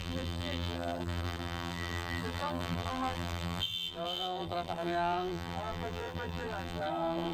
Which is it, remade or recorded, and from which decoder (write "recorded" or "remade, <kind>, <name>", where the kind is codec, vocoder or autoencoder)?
remade, vocoder, BigVGAN v2